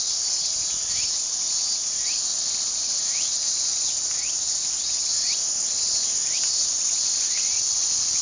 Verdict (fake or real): real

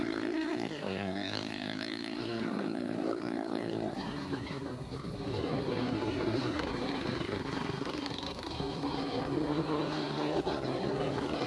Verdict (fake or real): fake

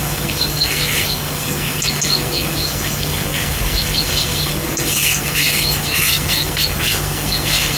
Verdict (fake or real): fake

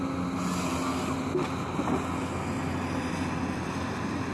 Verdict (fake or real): real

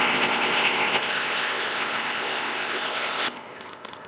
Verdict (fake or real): fake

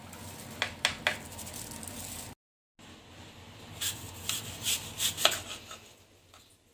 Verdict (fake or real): real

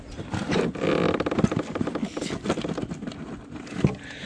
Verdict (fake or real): real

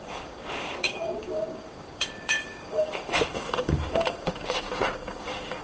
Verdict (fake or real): fake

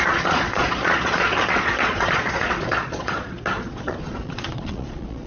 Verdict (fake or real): fake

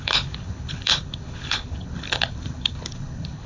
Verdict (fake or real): fake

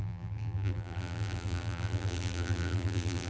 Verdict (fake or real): fake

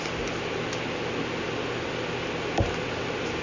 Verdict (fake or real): real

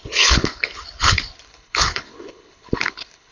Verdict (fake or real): fake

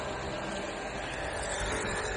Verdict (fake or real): real